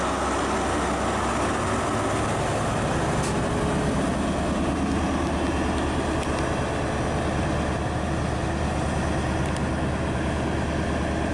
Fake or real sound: real